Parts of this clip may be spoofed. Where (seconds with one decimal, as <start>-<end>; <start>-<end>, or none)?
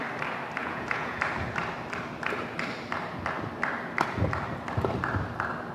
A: 0.6-1.2